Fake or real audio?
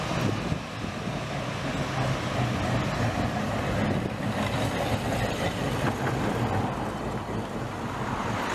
real